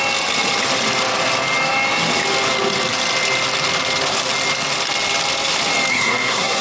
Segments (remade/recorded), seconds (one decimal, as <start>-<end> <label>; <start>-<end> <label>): 0.0-5.9 recorded; 5.9-6.6 remade